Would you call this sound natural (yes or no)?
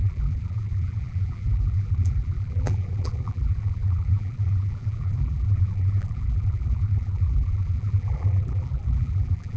no